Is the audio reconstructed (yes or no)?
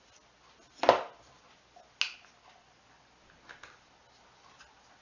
no